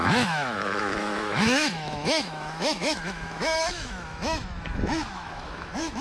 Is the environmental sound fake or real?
fake